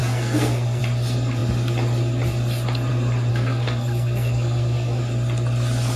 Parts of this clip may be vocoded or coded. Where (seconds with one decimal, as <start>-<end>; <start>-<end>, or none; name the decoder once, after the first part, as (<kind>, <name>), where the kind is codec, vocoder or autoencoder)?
0.0-0.8 (codec, SNAC); 3.3-5.0